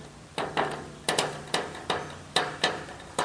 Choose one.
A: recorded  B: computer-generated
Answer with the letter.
A